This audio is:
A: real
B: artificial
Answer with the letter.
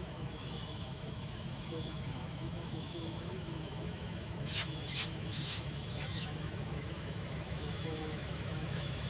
B